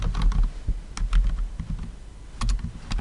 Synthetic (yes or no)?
no